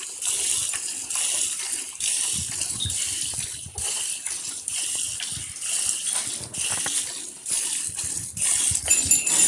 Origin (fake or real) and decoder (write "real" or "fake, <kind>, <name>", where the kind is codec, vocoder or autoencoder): real